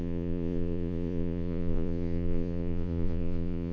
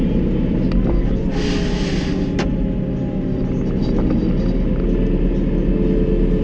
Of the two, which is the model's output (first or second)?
first